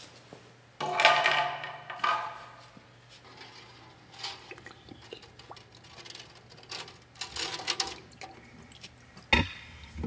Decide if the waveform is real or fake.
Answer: real